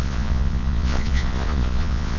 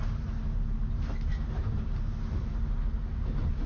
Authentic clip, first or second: second